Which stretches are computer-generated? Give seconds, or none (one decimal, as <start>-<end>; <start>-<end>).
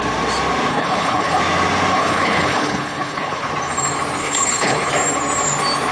0.7-1.4; 1.9-3.5; 4.2-4.9